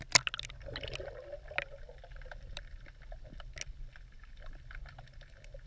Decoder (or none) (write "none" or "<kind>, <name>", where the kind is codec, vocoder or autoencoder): none